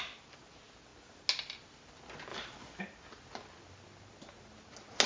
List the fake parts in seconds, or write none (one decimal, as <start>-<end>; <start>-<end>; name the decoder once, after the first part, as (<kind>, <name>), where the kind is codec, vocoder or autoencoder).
2.3-2.8 (vocoder, BigVGAN v2)